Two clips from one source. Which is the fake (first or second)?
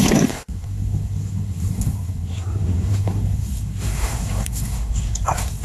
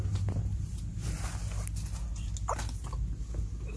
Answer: first